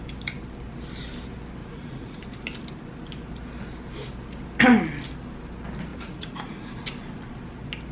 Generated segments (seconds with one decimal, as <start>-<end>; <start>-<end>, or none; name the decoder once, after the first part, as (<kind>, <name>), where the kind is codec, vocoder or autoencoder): 1.6-2.2 (vocoder, Vocos); 5.9-6.7

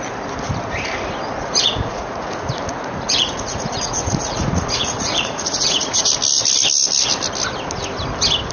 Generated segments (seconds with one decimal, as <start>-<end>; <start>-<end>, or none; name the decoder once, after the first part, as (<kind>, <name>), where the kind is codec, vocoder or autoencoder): 1.4-6.1 (vocoder, Vocos)

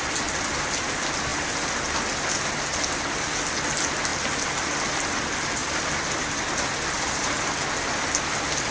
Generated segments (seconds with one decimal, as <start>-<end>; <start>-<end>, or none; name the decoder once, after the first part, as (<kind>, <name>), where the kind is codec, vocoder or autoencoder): none